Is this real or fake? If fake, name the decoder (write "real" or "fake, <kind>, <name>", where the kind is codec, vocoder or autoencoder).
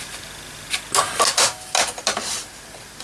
real